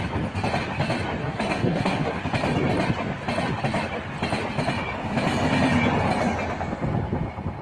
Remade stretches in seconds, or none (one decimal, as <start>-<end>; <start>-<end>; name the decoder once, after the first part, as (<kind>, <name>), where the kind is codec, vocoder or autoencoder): 1.2-2.2 (codec, SNAC)